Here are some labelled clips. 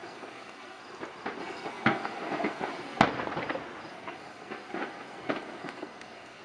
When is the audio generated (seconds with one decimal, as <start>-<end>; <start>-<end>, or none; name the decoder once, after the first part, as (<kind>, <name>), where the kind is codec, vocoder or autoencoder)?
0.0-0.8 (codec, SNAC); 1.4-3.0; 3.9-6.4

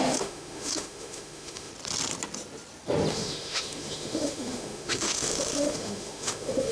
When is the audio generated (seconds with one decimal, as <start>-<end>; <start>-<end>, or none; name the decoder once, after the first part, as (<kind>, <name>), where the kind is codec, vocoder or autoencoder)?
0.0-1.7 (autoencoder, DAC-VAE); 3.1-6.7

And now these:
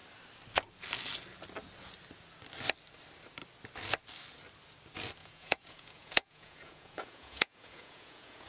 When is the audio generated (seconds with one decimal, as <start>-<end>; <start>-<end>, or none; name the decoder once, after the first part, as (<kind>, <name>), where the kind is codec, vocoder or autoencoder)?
5.2-8.5 (vocoder, Vocos)

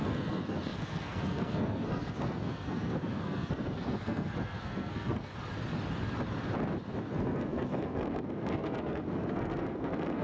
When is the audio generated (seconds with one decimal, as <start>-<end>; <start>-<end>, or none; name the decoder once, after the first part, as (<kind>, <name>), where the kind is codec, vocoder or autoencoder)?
0.0-5.3 (codec, SNAC); 7.0-10.2

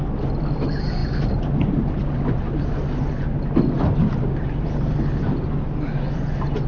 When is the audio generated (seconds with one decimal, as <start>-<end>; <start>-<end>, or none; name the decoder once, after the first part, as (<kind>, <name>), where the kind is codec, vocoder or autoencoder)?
none

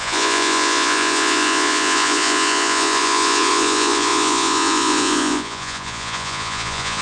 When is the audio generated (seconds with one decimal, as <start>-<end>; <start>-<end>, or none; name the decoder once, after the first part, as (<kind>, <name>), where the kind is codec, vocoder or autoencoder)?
0.0-7.0 (vocoder, Vocos)

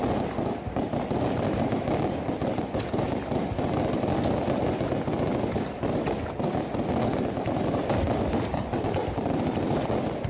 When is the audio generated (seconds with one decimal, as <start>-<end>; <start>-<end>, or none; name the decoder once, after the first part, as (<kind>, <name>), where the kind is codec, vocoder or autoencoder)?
none